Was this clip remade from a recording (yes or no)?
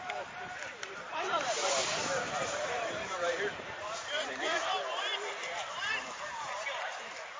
yes